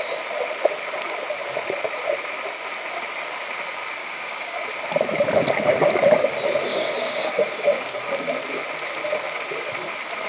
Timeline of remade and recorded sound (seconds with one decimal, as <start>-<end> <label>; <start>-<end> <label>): 0.0-4.0 recorded; 4.0-4.6 remade; 4.6-6.7 recorded; 6.7-8.3 remade; 8.3-10.3 recorded